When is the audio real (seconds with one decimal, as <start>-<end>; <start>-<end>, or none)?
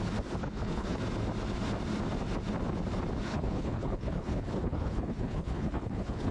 0.0-0.4; 1.0-3.3